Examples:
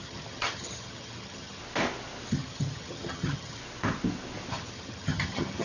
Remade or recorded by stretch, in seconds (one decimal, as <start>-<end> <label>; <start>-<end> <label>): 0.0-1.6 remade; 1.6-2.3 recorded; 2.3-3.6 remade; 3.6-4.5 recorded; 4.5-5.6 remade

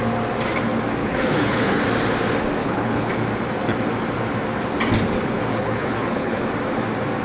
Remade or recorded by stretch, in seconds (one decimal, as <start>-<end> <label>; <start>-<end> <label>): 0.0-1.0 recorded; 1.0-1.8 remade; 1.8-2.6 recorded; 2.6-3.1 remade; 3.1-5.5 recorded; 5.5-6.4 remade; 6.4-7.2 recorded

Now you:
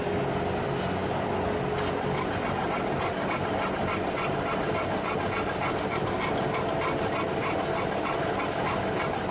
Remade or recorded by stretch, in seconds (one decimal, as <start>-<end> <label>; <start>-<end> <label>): 0.0-9.3 recorded

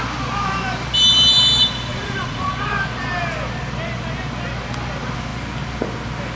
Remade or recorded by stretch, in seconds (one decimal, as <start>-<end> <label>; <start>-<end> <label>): 0.0-1.9 recorded; 1.9-2.5 remade; 2.5-6.4 recorded

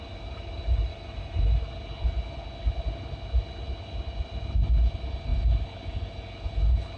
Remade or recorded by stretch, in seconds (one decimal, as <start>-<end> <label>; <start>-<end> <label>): 0.0-0.9 recorded; 0.9-1.6 remade; 1.6-7.0 recorded

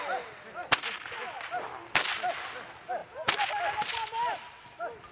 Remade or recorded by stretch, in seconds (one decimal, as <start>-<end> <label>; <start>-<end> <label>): 0.0-5.1 recorded

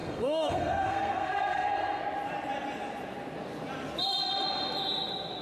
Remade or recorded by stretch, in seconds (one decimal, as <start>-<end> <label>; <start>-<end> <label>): 0.0-2.0 remade; 2.0-5.4 recorded